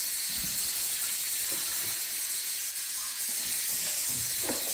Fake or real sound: fake